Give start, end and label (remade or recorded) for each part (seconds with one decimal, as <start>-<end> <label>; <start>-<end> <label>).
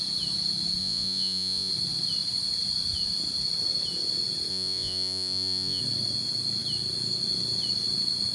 0.0-0.8 recorded; 0.8-1.7 remade; 1.7-4.5 recorded; 4.5-5.8 remade; 5.8-8.3 recorded